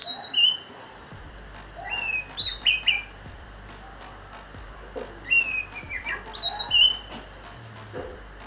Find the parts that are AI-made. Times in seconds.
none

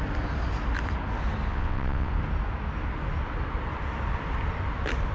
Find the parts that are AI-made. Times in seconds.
1.5-2.1 (vocoder, WaveNeXt)

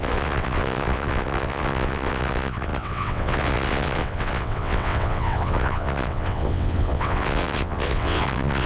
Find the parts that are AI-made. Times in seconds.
0.0-8.7 (vocoder, WaveNeXt)

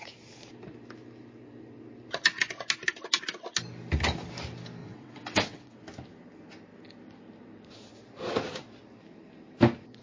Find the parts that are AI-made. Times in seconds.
4.8-5.8 (vocoder, WaveNeXt)

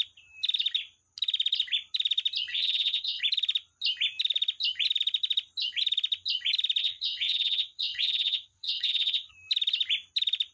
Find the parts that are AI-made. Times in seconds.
2.5-3.2 (vocoder, WaveNeXt); 6.8-9.3